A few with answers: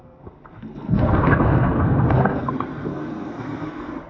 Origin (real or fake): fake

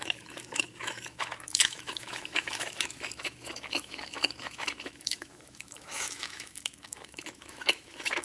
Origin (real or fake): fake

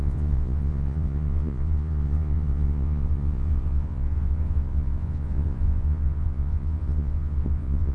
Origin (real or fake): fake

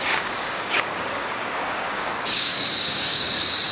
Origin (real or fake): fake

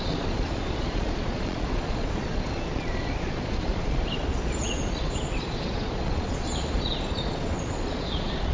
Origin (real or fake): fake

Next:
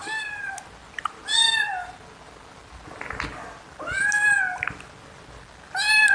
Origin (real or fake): real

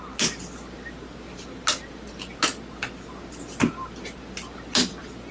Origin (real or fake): real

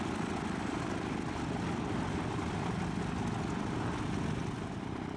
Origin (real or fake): real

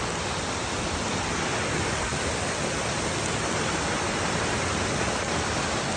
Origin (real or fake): real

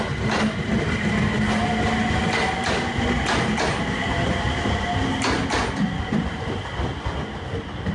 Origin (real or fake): real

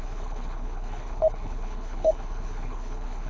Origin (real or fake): fake